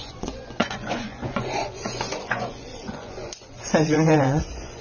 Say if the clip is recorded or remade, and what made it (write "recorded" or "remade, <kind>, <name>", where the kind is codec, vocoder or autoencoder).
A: remade, vocoder, Vocos